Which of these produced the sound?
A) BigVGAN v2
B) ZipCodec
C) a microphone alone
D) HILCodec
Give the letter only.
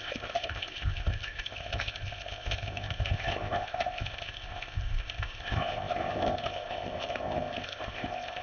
B